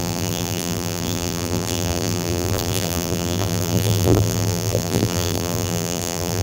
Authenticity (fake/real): fake